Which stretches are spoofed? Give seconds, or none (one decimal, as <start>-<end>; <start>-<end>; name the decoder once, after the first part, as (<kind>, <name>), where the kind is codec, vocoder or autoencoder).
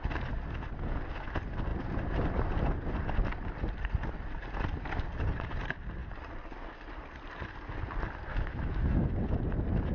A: 8.3-9.1 (autoencoder, DAC-VAE)